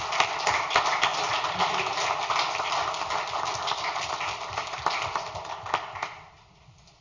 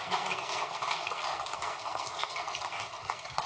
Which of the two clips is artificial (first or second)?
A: second